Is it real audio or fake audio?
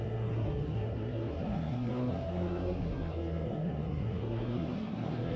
fake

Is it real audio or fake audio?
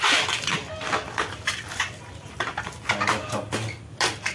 real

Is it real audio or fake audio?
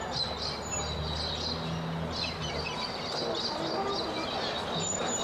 real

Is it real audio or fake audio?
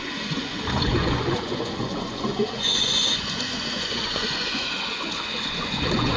fake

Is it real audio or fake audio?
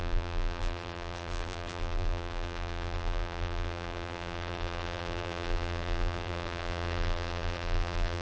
fake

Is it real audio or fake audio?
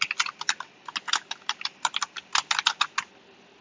real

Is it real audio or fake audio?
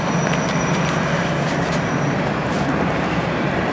real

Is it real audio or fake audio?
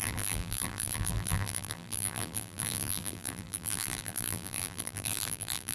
fake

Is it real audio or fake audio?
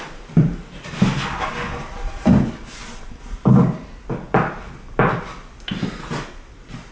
real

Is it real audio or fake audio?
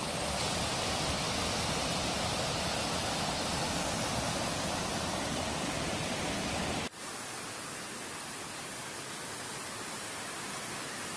real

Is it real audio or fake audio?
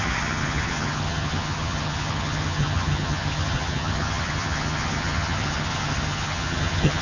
fake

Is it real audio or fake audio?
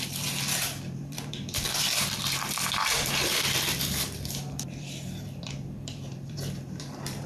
fake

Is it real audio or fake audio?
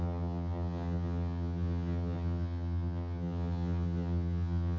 fake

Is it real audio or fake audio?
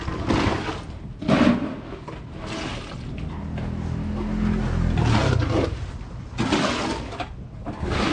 real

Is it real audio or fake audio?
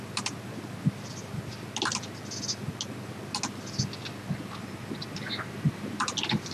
real